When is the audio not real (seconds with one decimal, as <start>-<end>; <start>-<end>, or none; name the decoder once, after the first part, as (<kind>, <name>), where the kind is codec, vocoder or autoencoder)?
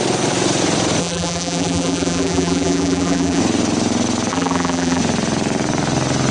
1.0-3.4 (vocoder, BigVGAN v2); 4.3-5.0